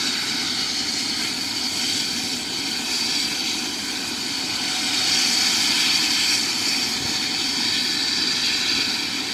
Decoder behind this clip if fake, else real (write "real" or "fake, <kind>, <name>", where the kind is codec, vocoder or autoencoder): real